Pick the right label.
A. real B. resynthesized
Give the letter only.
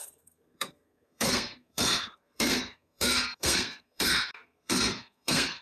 B